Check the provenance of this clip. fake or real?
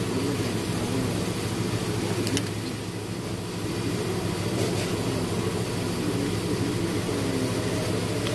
real